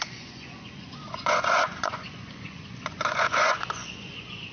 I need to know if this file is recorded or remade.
remade